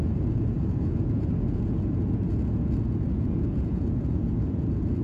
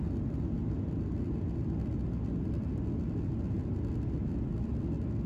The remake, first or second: first